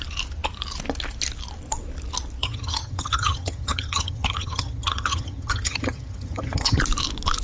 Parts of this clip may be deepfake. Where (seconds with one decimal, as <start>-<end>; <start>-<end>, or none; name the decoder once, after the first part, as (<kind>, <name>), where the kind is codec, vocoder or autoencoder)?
2.4-6.8 (vocoder, HiFi-GAN)